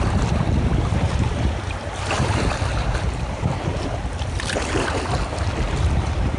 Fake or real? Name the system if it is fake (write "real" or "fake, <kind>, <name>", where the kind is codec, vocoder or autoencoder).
real